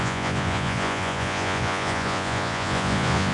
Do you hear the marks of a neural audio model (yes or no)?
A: yes